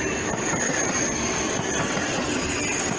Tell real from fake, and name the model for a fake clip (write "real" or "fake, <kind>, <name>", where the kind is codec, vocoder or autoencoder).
real